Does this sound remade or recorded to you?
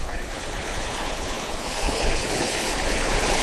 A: remade